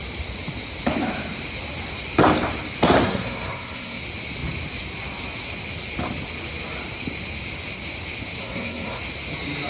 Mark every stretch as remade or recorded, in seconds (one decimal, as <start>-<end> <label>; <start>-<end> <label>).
0.0-3.0 recorded; 3.0-4.0 remade; 4.0-8.4 recorded; 8.4-9.0 remade; 9.0-9.7 recorded